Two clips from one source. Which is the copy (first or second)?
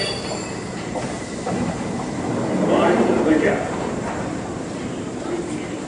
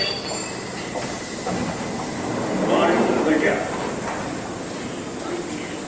first